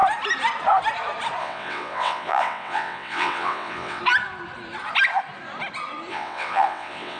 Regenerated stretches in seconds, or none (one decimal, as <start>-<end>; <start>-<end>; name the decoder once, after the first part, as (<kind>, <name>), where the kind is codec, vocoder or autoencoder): 1.4-4.0 (vocoder, WaveNeXt); 6.1-7.2